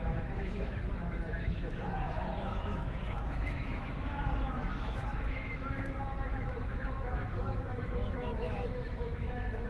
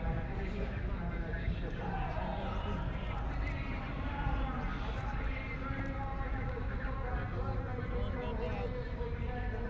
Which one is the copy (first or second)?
first